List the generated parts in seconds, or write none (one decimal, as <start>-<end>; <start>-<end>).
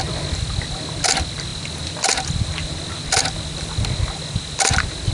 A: none